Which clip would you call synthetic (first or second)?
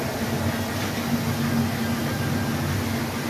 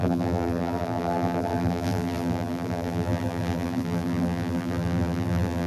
second